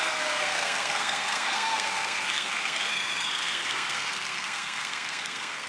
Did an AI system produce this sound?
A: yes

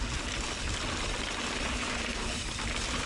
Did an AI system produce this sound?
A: no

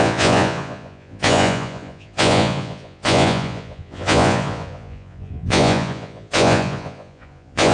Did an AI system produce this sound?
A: yes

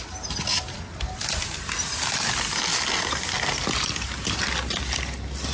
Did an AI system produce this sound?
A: no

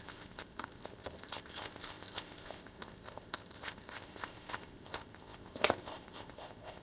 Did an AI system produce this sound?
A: yes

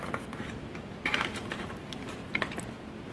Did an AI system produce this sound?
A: no